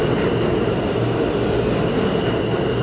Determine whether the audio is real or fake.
real